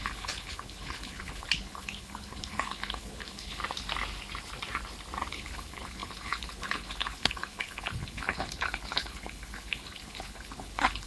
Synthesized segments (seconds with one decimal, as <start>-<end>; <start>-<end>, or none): 0.0-3.6; 5.3-11.1